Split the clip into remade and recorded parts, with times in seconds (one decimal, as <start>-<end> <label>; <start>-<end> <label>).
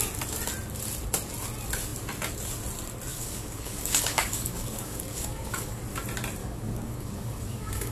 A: 0.0-3.1 recorded; 3.1-5.8 remade; 5.8-6.4 recorded; 6.4-7.9 remade